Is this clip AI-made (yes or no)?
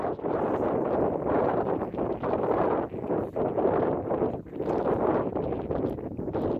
no